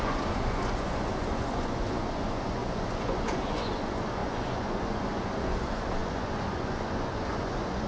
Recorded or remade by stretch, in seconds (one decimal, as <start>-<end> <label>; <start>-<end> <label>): 0.0-7.9 remade